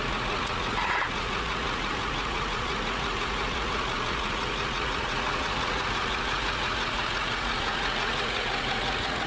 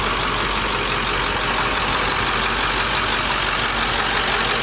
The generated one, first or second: first